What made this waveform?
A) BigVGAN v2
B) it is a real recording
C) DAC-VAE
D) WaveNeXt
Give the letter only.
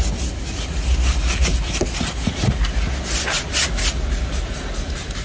B